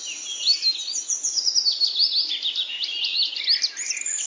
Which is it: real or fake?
real